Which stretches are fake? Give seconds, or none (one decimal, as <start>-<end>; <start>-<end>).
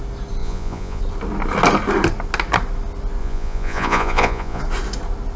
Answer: 0.4-1.0; 3.2-4.6